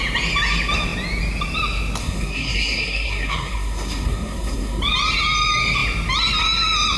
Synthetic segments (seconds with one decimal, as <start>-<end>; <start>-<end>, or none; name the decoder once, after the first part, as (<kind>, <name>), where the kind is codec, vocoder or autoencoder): 2.0-4.8 (codec, SNAC)